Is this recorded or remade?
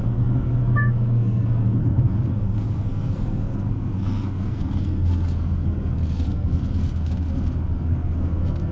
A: remade